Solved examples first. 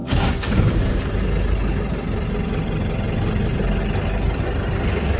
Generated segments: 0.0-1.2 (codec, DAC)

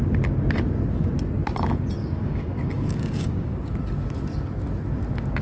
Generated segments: 2.0-3.7 (codec, DAC)

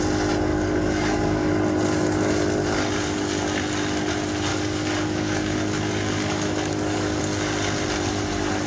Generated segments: 0.5-1.5 (codec, DAC); 4.5-7.2

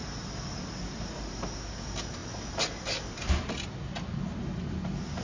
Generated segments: none

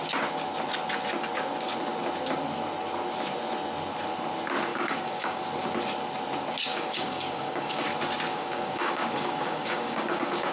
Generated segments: 4.7-5.4 (codec, DAC); 6.7-7.9; 8.3-10.5

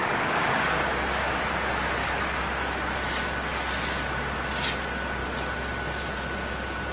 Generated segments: 0.0-1.4 (codec, DAC); 2.0-2.5

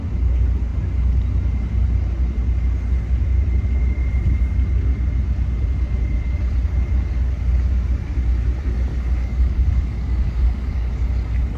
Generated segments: 8.9-10.9 (codec, DAC)

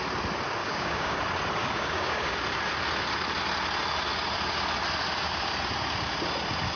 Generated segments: 0.6-1.2 (codec, DAC); 1.6-2.3